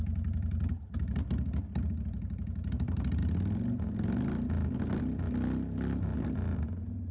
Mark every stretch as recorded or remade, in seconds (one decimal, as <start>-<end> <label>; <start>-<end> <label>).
0.0-7.1 recorded